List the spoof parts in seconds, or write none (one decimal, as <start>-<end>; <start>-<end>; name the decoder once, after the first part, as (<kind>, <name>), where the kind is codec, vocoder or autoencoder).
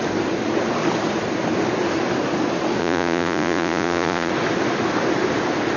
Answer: 2.8-4.3 (vocoder, Vocos)